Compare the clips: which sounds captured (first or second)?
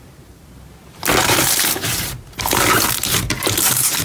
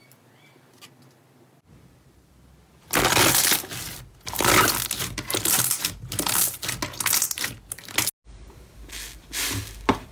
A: second